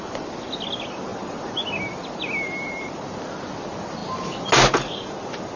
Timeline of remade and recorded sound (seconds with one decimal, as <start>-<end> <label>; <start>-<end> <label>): 0.0-5.6 recorded